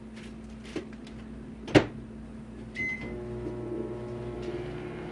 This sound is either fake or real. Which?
real